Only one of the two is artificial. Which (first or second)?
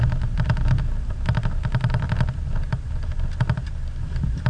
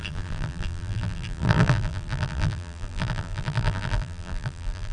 second